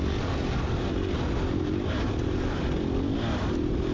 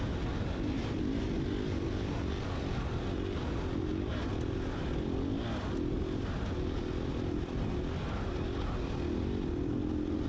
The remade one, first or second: first